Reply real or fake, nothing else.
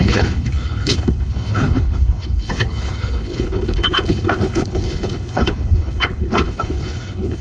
fake